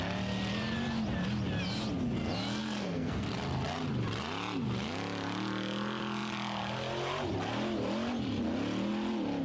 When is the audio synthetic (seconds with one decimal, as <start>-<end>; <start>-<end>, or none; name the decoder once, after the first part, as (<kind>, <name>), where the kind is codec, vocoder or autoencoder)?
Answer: 2.6-3.3 (codec, SNAC)